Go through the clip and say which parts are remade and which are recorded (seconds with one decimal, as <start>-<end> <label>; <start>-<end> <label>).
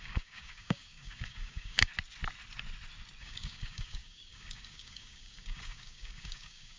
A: 0.0-1.9 remade; 1.9-3.2 recorded; 3.2-6.8 remade